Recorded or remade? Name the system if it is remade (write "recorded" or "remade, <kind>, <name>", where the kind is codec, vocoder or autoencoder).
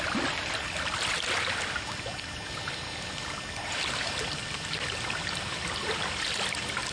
recorded